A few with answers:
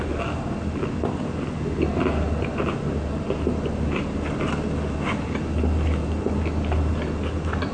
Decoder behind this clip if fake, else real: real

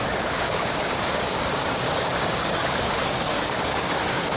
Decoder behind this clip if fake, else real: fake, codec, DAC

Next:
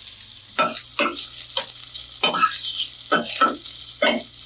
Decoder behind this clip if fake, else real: real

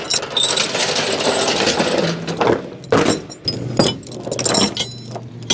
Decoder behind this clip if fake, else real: real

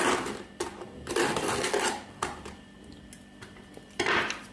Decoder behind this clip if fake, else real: fake, vocoder, BigVGAN v2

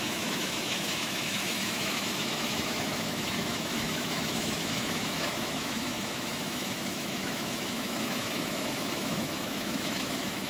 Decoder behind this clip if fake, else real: fake, autoencoder, DAC-VAE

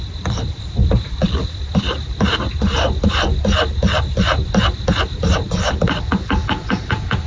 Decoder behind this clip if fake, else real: real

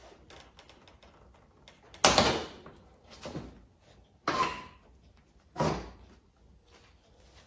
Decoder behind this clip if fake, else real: real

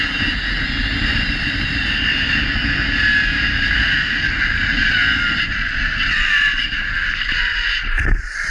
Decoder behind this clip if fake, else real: real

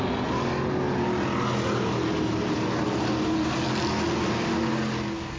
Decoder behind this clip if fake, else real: real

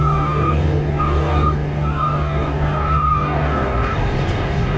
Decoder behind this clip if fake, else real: fake, codec, DAC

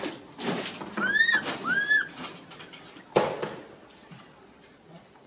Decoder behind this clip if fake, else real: real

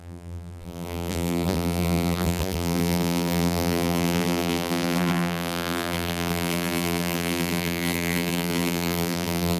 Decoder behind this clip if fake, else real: fake, vocoder, BigVGAN v2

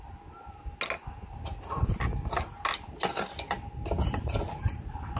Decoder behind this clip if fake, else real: real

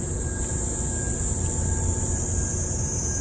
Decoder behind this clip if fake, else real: real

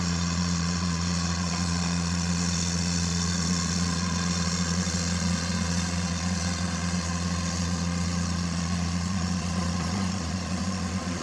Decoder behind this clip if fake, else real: fake, vocoder, Vocos